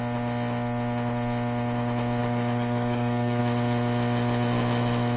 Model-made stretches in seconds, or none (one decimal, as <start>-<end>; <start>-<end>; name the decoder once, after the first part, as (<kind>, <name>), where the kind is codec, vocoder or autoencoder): 2.2-3.4 (codec, DAC)